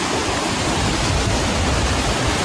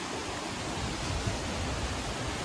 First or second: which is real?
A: second